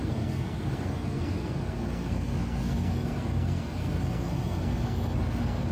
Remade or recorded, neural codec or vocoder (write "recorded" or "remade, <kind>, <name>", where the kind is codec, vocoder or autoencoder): remade, codec, SNAC